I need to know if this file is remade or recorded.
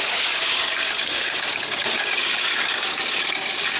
remade